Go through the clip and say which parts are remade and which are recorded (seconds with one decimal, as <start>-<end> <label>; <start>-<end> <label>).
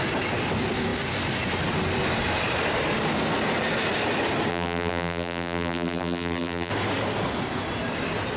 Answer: 0.0-4.5 recorded; 4.5-6.7 remade; 6.7-8.4 recorded